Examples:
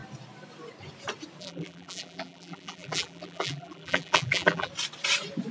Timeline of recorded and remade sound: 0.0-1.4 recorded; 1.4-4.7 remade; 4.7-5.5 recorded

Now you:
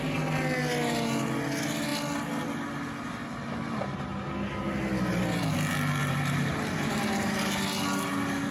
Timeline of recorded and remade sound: 0.0-6.0 recorded; 6.0-7.3 remade; 7.3-8.5 recorded